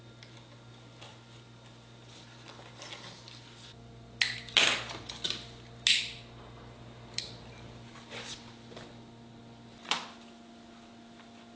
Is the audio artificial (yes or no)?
no